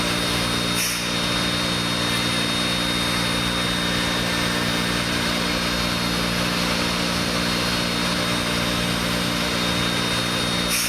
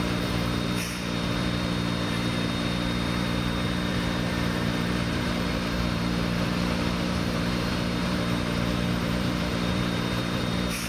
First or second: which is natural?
first